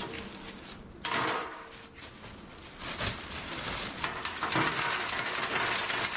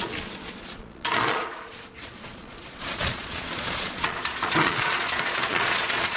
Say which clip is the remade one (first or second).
second